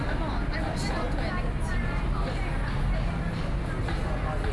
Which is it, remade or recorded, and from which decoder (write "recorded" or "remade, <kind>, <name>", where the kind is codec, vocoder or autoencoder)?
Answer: recorded